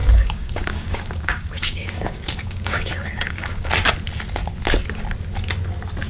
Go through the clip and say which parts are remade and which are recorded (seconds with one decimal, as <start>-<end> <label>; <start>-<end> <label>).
0.0-3.7 remade; 3.7-6.1 recorded